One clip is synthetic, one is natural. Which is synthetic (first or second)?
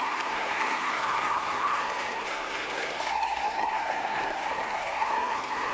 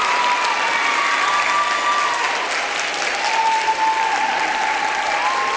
first